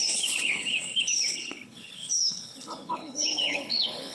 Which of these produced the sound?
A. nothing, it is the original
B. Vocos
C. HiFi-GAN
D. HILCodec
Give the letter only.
D